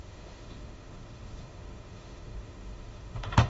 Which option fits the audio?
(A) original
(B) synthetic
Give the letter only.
B